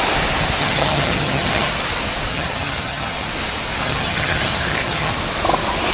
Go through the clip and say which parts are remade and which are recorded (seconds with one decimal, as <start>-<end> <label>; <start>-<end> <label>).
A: 0.0-0.6 recorded; 0.6-1.7 remade; 1.7-2.3 recorded; 2.3-3.3 remade; 3.3-3.8 recorded; 3.8-5.1 remade; 5.1-5.9 recorded